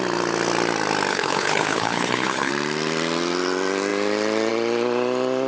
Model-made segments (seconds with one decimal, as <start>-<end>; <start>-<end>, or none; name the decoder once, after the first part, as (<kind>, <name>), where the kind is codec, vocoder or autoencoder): 1.1-2.5 (codec, HILCodec)